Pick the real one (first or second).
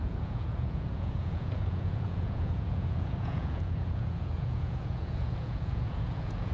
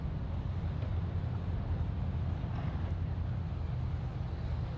second